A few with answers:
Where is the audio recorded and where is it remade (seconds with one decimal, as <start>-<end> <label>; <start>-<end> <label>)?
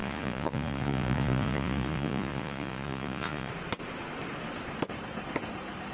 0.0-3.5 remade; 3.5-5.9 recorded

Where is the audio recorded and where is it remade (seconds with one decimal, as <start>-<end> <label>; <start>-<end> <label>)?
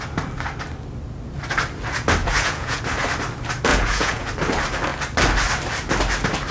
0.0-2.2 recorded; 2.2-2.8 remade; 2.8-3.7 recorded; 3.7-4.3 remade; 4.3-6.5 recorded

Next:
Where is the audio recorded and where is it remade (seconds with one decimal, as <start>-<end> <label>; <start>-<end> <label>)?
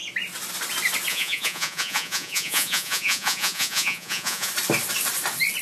0.0-1.1 recorded; 1.1-4.5 remade; 4.5-5.6 recorded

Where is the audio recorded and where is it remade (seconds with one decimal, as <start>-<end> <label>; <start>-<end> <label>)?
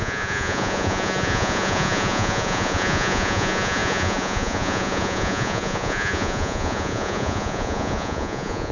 0.0-8.7 remade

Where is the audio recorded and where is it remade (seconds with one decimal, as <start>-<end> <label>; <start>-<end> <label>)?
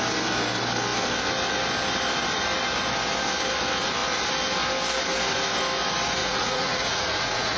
0.0-6.2 recorded; 6.2-7.6 remade